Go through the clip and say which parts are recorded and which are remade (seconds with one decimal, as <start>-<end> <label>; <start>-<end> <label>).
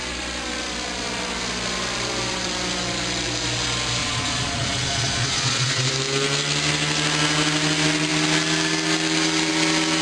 0.0-4.0 recorded; 4.0-5.9 remade; 5.9-10.0 recorded